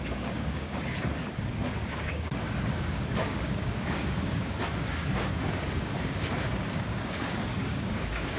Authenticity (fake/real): fake